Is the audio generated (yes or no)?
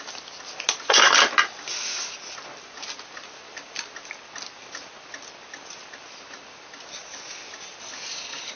no